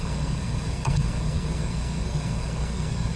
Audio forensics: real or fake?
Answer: fake